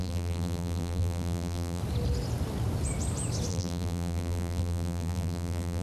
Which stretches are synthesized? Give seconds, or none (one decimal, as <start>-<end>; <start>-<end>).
0.0-1.8; 3.5-5.8